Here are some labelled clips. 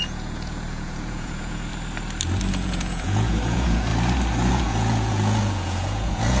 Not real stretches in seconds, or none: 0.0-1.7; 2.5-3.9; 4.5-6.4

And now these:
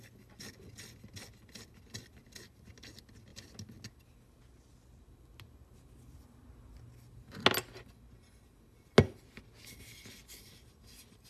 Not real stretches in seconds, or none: none

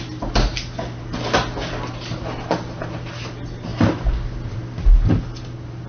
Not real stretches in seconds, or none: none

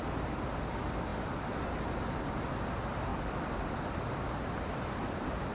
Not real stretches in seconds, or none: none

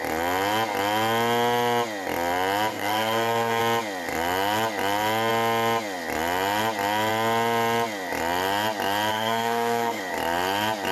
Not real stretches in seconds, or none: 2.7-3.6; 9.1-10.0